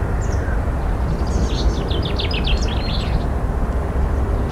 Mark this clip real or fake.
real